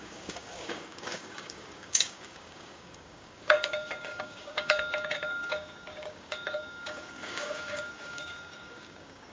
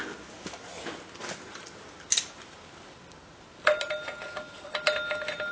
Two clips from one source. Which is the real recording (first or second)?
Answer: second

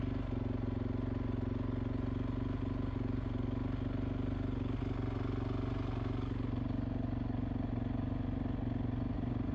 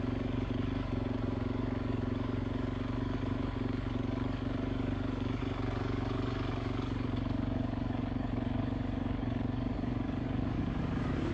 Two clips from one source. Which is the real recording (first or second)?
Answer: first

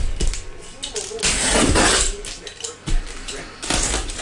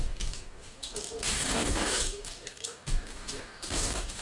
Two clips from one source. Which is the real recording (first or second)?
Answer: first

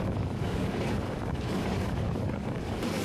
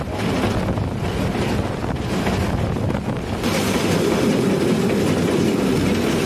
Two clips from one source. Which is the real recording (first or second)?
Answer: second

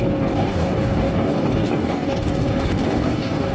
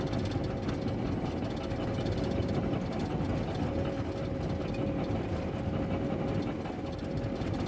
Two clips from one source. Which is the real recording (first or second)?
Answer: second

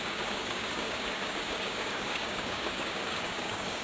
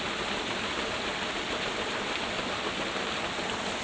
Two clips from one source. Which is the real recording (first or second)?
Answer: second